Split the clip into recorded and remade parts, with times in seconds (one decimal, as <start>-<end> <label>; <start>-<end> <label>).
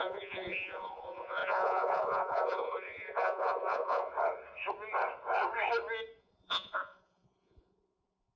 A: 0.0-4.1 remade; 4.1-6.2 recorded; 6.2-8.4 remade